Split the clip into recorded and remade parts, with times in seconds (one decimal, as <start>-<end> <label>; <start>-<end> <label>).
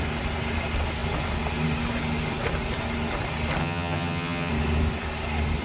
0.0-3.6 recorded; 3.6-4.5 remade; 4.5-5.6 recorded